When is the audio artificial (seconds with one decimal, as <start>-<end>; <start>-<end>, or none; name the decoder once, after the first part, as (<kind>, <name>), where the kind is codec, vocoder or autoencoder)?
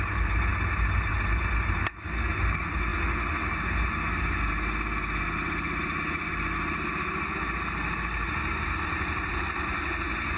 none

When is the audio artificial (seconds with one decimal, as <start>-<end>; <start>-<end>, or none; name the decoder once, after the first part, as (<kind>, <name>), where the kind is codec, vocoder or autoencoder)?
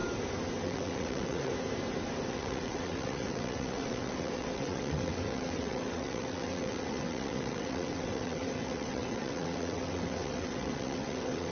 0.6-1.5 (vocoder, WaveNeXt); 2.3-11.5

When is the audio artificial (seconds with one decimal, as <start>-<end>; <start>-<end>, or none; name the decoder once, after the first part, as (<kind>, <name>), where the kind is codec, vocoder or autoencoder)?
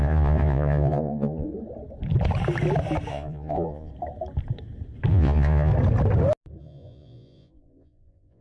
0.0-1.5 (vocoder, Vocos); 3.1-3.9; 5.1-5.7; 6.6-8.4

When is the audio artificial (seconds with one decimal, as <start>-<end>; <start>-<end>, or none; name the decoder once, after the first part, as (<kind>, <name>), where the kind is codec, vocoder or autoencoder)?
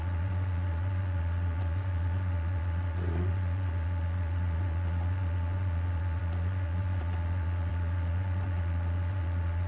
0.0-9.7 (vocoder, Vocos)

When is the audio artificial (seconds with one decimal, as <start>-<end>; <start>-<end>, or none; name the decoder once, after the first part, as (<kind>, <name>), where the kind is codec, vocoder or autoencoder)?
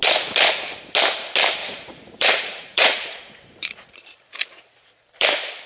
1.6-5.0 (vocoder, Vocos)